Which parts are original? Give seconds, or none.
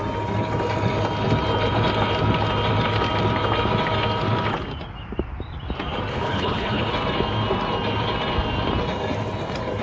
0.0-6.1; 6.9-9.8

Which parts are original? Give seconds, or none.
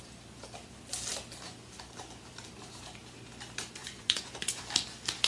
0.0-3.8; 4.6-5.3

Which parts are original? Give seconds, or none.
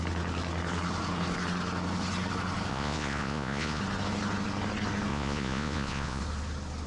0.0-2.7; 3.8-5.1; 6.2-6.9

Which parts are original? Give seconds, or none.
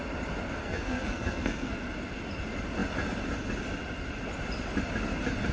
0.0-0.6; 1.8-5.5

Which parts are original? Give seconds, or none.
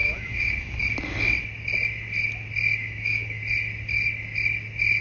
0.8-2.8; 3.4-5.0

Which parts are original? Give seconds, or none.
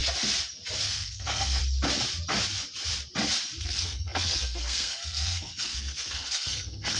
0.0-0.8; 1.6-3.6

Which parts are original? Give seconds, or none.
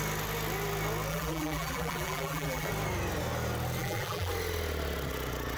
0.0-1.1; 2.7-3.8; 4.3-5.6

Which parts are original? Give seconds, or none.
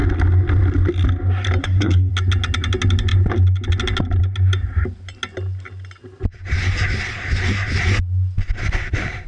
0.0-1.6; 2.1-9.3